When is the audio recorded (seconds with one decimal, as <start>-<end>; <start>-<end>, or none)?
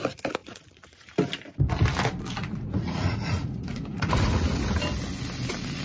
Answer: 0.0-0.4; 1.0-2.4; 4.6-5.8